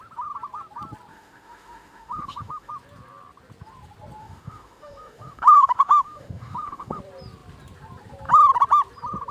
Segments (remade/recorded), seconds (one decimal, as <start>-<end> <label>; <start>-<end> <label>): 0.0-1.1 recorded; 1.1-2.7 remade; 2.7-4.2 recorded; 4.2-7.0 remade; 7.0-9.3 recorded